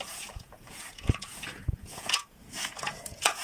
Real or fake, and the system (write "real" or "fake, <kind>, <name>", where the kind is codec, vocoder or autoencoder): fake, vocoder, Vocos